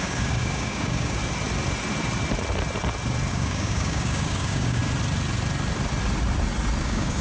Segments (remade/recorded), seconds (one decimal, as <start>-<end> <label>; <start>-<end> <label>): 0.0-1.2 remade; 1.2-3.3 recorded; 3.3-4.8 remade; 4.8-6.8 recorded; 6.8-7.2 remade